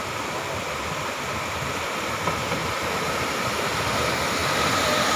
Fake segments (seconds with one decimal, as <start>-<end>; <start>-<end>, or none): none

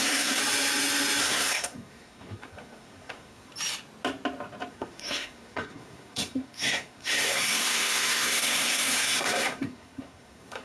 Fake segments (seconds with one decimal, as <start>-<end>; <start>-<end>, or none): 0.0-0.4; 1.2-3.5; 4.7-10.6

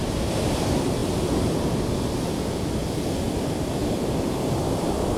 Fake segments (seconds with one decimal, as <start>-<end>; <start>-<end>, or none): 0.0-1.0; 3.4-5.2

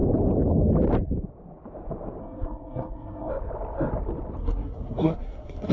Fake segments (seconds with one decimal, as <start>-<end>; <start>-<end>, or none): 2.2-3.3; 4.4-5.7

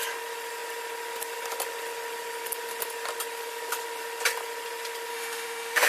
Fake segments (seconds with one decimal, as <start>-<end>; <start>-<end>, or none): 5.1-5.9